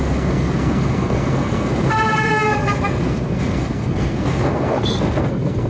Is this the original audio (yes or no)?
no